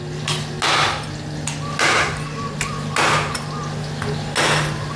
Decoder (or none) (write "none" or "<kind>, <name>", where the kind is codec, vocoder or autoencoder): none